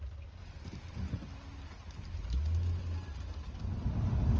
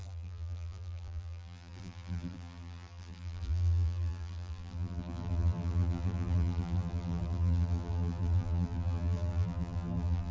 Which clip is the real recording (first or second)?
first